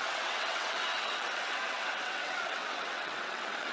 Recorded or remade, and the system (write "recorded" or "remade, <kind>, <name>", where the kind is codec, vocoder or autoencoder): remade, vocoder, WaveNeXt